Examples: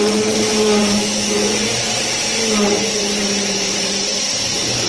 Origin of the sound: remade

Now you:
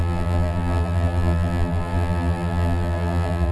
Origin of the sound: remade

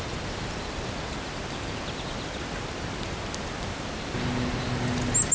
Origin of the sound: recorded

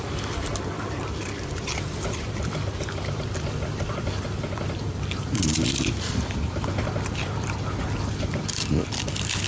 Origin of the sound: remade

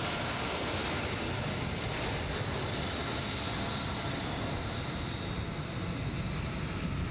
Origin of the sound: recorded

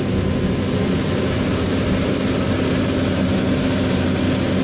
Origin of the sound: recorded